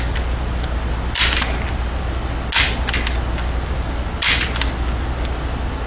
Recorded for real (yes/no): yes